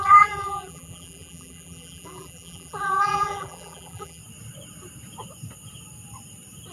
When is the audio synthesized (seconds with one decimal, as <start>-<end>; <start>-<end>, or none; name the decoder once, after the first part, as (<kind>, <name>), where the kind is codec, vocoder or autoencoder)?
0.0-4.2 (vocoder, BigVGAN v2)